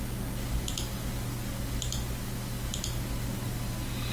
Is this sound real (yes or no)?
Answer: yes